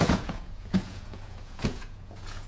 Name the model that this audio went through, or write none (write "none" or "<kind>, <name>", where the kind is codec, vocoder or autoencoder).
vocoder, Vocos